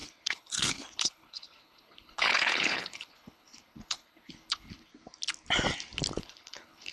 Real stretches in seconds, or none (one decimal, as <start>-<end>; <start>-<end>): 4.9-6.2